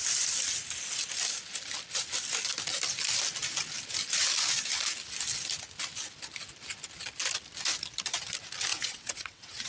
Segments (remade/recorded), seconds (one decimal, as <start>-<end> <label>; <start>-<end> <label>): 0.0-8.7 recorded; 8.7-9.7 remade